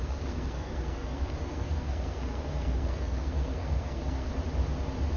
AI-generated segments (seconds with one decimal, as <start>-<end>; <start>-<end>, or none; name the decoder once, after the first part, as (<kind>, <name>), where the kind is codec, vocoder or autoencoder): 0.0-4.3 (codec, SNAC)